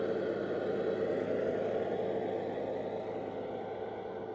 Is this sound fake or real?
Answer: real